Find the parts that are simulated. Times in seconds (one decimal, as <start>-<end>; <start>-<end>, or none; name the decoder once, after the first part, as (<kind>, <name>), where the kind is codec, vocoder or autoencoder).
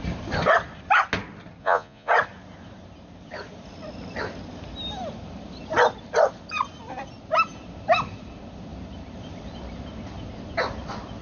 1.6-2.1 (vocoder, Vocos)